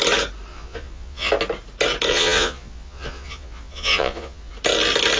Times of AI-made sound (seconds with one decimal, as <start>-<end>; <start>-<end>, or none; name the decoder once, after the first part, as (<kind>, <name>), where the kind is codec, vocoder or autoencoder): 0.5-1.3 (vocoder, Vocos); 2.1-4.5